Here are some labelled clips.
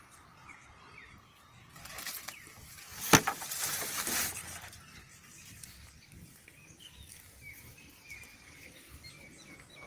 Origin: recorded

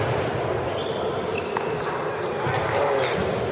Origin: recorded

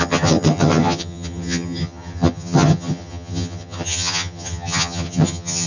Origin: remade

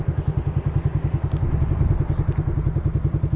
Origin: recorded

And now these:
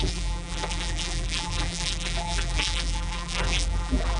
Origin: remade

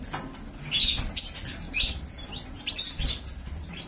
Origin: recorded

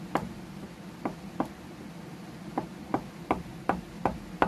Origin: recorded